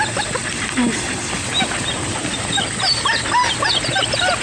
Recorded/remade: recorded